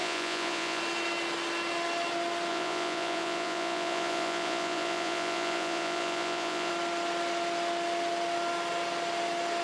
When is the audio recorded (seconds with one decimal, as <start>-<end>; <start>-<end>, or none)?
0.8-2.5; 6.7-9.6